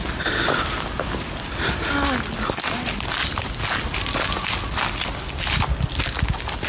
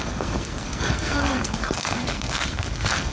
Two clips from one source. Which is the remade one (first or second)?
second